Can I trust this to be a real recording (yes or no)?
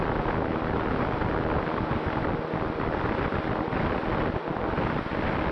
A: yes